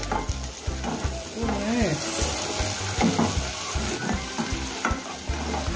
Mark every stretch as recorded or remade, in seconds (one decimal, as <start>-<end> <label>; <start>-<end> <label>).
0.0-5.8 recorded